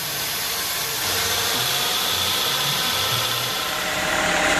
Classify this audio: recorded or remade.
remade